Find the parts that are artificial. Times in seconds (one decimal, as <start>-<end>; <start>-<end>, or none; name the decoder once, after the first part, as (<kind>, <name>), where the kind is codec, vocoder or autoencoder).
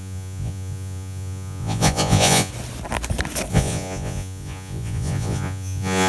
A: 0.0-2.5 (vocoder, Vocos); 3.5-6.1